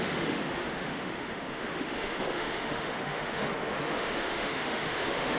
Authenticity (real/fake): fake